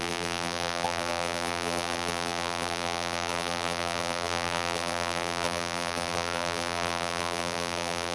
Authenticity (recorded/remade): remade